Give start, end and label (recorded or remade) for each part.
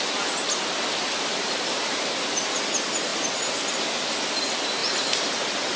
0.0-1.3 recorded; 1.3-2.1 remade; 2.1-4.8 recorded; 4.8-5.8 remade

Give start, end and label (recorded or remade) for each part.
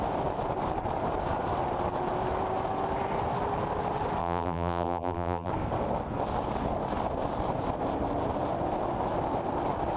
0.0-4.2 recorded; 4.2-5.5 remade; 5.5-10.0 recorded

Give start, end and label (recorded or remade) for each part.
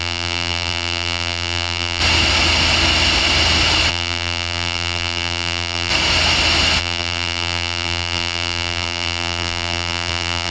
0.0-2.0 remade; 2.0-3.9 recorded; 3.9-5.9 remade; 5.9-6.8 recorded; 6.8-10.5 remade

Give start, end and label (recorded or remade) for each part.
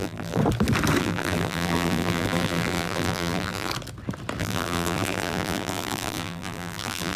0.0-0.4 remade; 0.4-1.0 recorded; 1.0-3.7 remade; 3.7-4.4 recorded; 4.4-7.2 remade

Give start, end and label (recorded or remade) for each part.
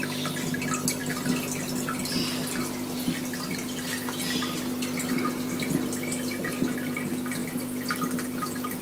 0.0-8.8 recorded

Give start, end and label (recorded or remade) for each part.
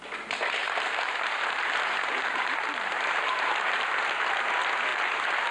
0.0-0.6 recorded; 0.6-3.9 remade; 3.9-4.9 recorded; 4.9-5.5 remade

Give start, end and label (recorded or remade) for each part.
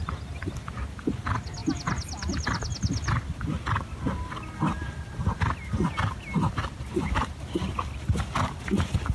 0.0-9.1 recorded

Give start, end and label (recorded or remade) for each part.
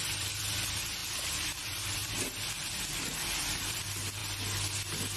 0.0-1.0 remade; 1.0-1.6 recorded; 1.6-4.2 remade; 4.2-5.2 recorded